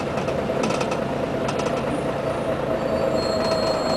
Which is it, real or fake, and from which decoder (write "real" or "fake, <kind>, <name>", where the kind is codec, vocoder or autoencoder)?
real